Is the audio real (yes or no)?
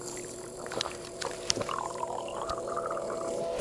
no